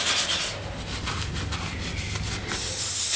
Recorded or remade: recorded